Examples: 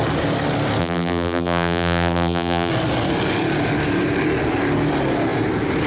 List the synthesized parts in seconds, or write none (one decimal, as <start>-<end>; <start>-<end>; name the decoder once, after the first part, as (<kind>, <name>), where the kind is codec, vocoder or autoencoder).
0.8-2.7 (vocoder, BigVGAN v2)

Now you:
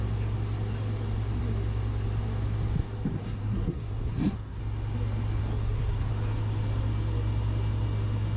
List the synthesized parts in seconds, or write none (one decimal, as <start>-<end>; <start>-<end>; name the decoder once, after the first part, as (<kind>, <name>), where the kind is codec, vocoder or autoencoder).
3.2-4.6 (codec, SNAC); 5.4-6.1

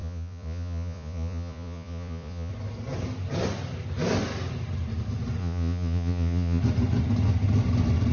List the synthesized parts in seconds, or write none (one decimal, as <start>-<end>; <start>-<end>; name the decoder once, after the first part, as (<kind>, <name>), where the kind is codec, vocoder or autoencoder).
0.0-2.5 (vocoder, Vocos); 5.4-6.6

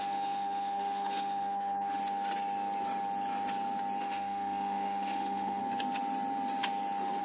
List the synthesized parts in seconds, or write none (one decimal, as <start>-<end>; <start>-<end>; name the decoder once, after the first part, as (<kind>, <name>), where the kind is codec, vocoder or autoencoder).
0.0-2.0 (autoencoder, DAC-VAE); 4.0-5.6